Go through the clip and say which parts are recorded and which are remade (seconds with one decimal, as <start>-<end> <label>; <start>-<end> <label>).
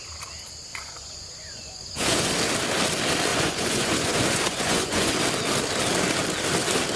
0.0-0.7 recorded; 0.7-2.3 remade; 2.3-3.3 recorded; 3.3-5.1 remade; 5.1-7.0 recorded